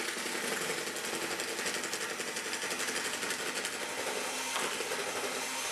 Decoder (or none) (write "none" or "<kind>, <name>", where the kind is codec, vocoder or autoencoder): none